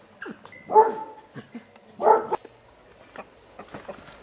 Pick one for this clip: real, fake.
real